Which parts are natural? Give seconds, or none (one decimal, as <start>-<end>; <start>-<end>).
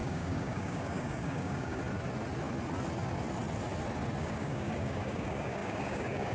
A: 1.8-4.2